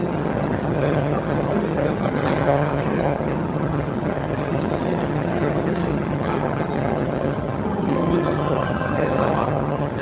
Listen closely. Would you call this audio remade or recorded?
remade